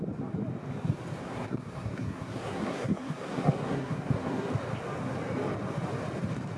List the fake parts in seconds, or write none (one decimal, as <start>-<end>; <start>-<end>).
1.2-4.5